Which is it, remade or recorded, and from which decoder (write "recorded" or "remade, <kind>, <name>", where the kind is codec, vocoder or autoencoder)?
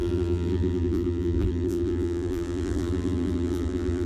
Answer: remade, vocoder, BigVGAN v2